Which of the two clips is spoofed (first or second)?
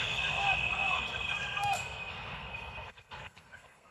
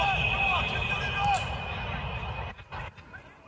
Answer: first